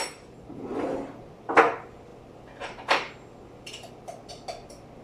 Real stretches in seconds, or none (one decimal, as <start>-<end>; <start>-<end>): 0.0-0.7; 1.2-5.0